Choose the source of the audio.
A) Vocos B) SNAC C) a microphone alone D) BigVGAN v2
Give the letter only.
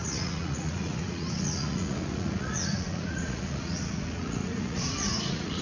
A